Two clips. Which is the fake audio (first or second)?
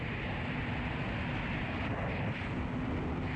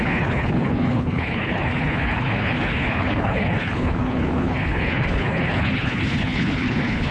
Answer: second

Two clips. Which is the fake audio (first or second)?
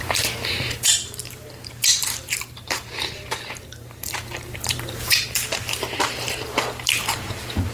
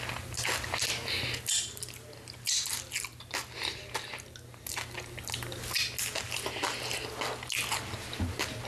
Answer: first